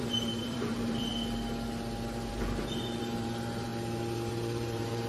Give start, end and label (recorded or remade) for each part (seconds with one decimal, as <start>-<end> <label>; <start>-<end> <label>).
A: 0.0-1.1 remade; 1.1-2.3 recorded; 2.3-3.7 remade; 3.7-4.3 recorded; 4.3-5.1 remade